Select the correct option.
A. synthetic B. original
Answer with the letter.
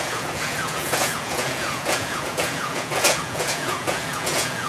A